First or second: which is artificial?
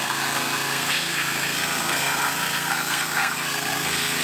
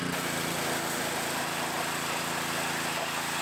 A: first